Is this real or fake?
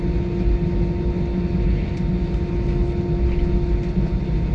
real